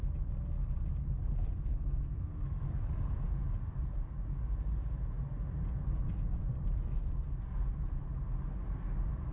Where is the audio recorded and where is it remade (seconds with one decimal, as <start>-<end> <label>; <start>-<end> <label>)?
0.0-1.7 recorded; 1.7-2.6 remade; 2.6-9.3 recorded